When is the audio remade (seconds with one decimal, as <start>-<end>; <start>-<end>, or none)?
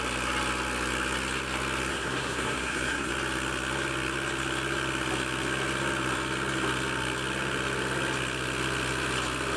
1.9-3.1